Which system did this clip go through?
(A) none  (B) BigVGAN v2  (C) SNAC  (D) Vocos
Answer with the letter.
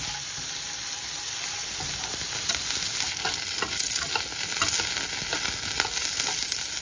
A